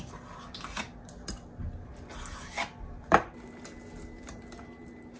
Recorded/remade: recorded